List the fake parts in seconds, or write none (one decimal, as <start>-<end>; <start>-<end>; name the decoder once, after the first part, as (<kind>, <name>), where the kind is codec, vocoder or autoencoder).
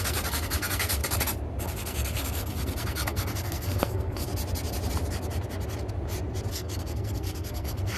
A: 0.0-1.0 (codec, SNAC); 1.6-4.3; 6.5-8.0